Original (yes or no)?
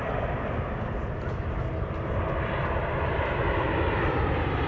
yes